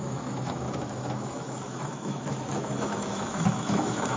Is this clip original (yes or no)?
no